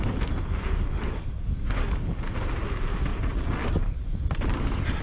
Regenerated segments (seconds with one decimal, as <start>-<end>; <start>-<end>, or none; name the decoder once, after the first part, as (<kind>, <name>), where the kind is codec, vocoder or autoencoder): none